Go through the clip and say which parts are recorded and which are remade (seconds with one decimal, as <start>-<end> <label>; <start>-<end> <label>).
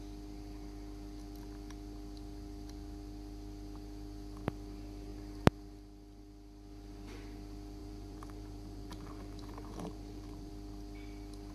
0.0-7.8 recorded; 7.8-10.5 remade; 10.5-11.5 recorded